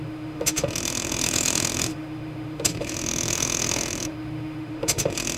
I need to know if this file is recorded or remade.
remade